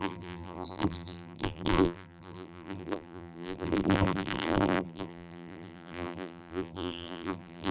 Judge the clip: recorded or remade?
remade